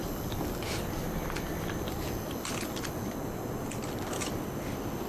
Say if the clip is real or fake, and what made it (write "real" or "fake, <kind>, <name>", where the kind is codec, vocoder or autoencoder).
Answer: fake, vocoder, BigVGAN v2